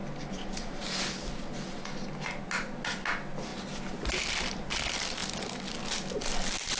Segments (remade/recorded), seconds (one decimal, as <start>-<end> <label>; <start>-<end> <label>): 0.0-6.8 recorded